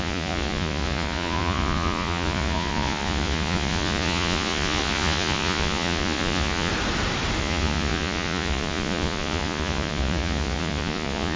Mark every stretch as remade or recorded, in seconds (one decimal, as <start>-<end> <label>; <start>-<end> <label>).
0.0-6.7 remade; 6.7-7.4 recorded; 7.4-11.4 remade